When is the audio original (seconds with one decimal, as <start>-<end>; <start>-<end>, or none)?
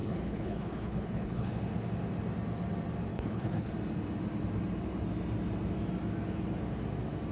1.5-3.1; 3.7-7.3